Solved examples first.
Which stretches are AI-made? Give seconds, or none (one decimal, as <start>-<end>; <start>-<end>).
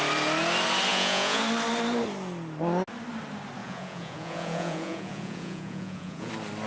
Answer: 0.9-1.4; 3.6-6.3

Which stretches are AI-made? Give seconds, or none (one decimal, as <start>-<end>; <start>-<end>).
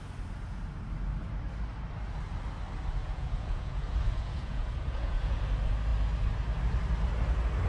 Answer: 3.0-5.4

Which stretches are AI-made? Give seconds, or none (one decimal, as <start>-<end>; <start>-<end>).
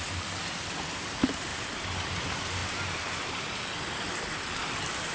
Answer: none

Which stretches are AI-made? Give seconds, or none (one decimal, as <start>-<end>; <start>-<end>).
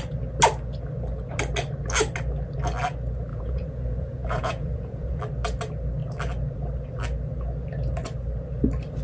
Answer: 3.3-5.2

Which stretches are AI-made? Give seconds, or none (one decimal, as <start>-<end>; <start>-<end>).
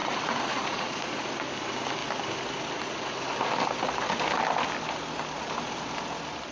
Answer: 0.0-1.3